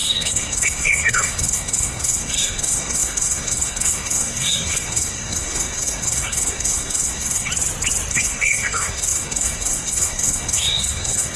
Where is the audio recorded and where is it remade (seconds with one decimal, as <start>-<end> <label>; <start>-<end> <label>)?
0.0-7.5 remade; 7.5-8.1 recorded; 8.1-11.4 remade